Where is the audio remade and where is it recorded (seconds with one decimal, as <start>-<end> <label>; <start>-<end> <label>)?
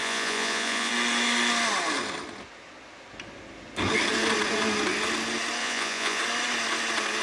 0.0-0.9 remade; 0.9-5.6 recorded; 5.6-6.2 remade; 6.2-7.2 recorded